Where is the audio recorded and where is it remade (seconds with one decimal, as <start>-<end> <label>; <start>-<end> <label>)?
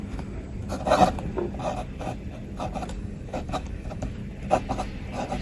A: 0.0-2.9 recorded; 2.9-4.2 remade; 4.2-5.4 recorded